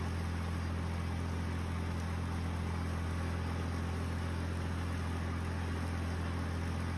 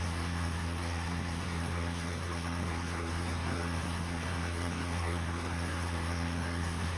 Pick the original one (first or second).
first